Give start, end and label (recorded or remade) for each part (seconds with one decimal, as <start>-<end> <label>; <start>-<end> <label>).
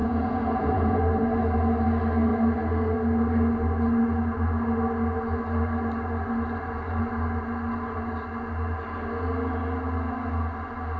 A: 0.0-1.0 remade; 1.0-11.0 recorded